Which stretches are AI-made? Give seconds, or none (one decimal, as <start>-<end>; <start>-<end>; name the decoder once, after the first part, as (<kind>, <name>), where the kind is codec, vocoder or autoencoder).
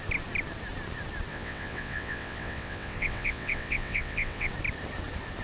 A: 1.3-4.5 (vocoder, WaveNeXt)